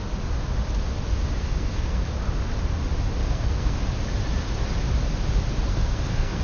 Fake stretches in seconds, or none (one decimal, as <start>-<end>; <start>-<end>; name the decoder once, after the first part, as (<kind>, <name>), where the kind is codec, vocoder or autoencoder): 1.4-2.0 (codec, SNAC); 3.2-3.9; 5.7-6.4